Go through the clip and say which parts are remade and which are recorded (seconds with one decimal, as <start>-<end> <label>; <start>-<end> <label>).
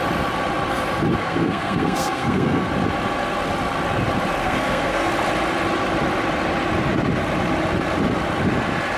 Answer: 0.0-1.2 recorded; 1.2-2.7 remade; 2.7-4.4 recorded; 4.4-5.1 remade; 5.1-9.0 recorded